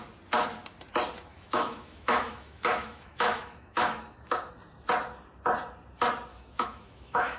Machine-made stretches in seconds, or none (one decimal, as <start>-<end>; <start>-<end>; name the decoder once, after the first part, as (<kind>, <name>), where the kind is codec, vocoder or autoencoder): 1.3-4.5 (autoencoder, DAC-VAE); 6.3-7.4